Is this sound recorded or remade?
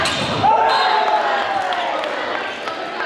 recorded